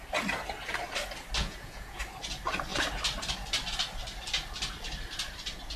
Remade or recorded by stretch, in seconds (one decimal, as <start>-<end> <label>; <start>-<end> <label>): 0.0-1.4 recorded; 1.4-2.0 remade; 2.0-5.8 recorded

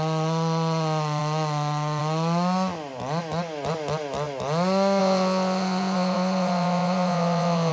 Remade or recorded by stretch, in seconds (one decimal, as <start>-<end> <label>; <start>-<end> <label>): 0.0-5.0 recorded; 5.0-7.7 remade

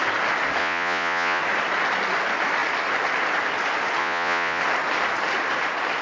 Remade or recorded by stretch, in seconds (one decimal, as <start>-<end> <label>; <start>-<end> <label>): 0.0-0.6 recorded; 0.6-1.4 remade; 1.4-4.0 recorded; 4.0-4.6 remade; 4.6-6.0 recorded

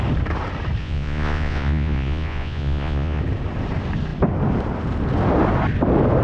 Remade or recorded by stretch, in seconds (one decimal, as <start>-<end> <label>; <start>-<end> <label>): 0.0-0.8 recorded; 0.8-3.2 remade; 3.2-6.2 recorded

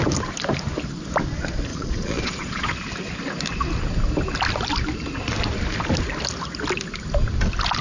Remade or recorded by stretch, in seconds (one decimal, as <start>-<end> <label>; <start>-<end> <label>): 0.0-1.7 recorded; 1.7-2.7 remade; 2.7-7.8 recorded